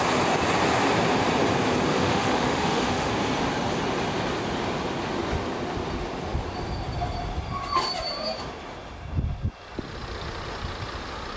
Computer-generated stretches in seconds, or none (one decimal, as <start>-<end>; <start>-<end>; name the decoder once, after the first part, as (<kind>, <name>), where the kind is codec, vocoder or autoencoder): 1.9-3.1 (autoencoder, DAC-VAE)

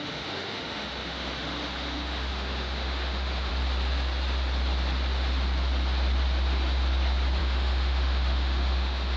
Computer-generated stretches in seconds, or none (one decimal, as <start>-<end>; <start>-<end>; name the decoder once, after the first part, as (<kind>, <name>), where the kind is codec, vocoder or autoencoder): 0.0-3.5 (autoencoder, DAC-VAE); 7.4-9.2

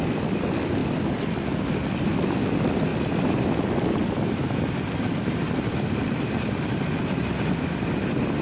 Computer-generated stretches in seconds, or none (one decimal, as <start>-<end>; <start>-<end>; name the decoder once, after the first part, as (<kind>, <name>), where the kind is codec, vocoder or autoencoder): none